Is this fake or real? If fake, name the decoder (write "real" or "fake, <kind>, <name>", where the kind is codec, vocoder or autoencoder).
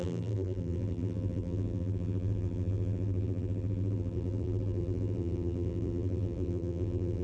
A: fake, vocoder, BigVGAN v2